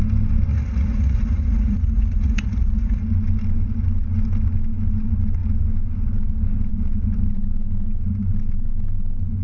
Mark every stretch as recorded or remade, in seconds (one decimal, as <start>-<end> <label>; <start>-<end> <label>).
0.0-0.5 recorded; 0.5-3.0 remade; 3.0-9.4 recorded